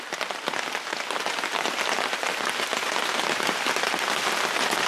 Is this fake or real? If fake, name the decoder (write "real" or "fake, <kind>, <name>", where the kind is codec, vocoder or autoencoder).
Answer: real